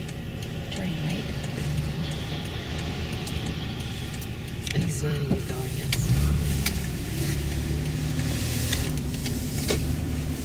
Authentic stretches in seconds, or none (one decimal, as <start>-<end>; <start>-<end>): none